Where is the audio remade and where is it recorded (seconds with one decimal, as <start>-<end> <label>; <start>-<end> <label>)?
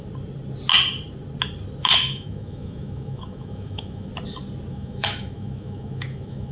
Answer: 0.0-1.8 recorded; 1.8-4.1 remade; 4.1-4.7 recorded; 4.7-6.5 remade